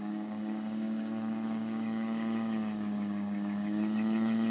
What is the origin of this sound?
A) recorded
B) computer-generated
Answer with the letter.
B